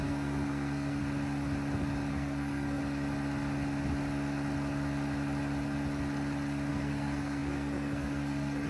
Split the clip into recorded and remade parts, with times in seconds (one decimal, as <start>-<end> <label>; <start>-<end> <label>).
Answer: 0.0-1.0 remade; 1.0-2.1 recorded; 2.1-2.8 remade; 2.8-6.7 recorded; 6.7-8.7 remade